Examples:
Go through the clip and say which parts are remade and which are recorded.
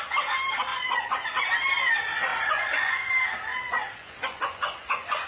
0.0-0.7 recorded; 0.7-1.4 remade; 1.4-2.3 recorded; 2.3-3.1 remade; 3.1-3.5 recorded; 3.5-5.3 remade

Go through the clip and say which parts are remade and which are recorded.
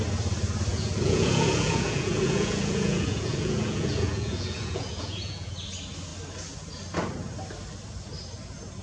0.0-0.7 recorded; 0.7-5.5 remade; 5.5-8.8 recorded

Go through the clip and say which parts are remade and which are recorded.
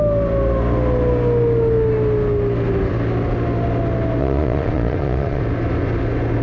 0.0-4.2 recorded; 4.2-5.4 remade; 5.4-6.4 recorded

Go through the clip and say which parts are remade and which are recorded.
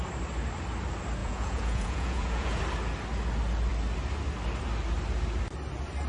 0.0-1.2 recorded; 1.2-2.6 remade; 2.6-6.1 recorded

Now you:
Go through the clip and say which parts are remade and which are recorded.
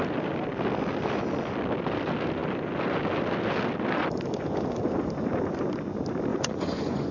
0.0-6.3 recorded; 6.3-7.1 remade